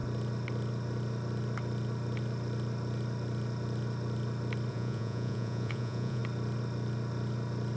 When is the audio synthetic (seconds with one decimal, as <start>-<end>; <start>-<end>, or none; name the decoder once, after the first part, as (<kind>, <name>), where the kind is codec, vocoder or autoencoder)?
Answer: 4.7-6.2 (vocoder, Vocos)